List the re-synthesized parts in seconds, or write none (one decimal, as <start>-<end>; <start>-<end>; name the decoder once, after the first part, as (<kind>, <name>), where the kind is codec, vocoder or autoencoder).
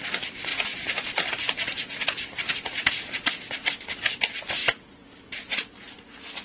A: none